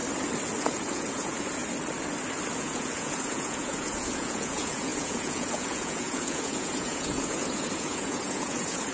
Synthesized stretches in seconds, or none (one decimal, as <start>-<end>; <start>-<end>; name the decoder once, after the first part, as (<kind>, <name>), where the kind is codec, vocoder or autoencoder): 0.6-1.6 (vocoder, Vocos); 2.6-8.9